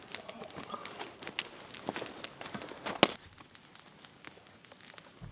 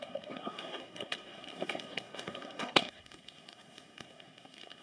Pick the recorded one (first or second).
first